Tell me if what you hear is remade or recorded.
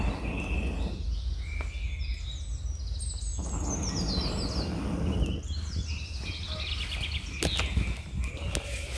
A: recorded